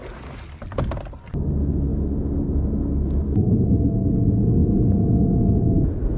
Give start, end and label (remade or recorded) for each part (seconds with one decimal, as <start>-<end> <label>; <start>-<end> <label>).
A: 0.0-6.2 recorded